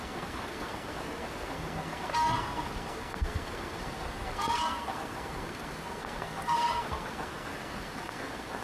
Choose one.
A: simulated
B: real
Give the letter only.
A